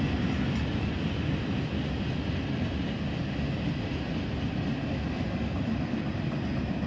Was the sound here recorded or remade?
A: recorded